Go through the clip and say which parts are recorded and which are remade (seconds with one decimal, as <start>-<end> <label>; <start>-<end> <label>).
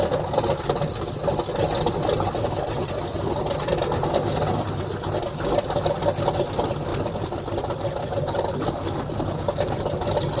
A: 0.0-10.4 recorded